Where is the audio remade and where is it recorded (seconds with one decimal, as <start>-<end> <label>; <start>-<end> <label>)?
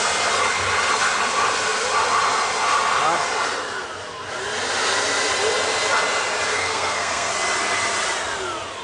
0.0-6.5 recorded; 6.5-7.3 remade; 7.3-8.8 recorded